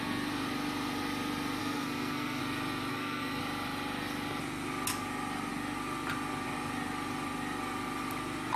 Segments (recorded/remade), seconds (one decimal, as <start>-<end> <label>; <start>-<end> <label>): 0.0-1.6 recorded; 1.6-2.4 remade; 2.4-2.9 recorded; 2.9-3.4 remade; 3.4-8.6 recorded